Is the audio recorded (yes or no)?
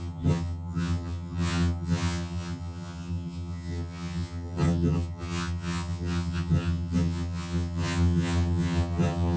no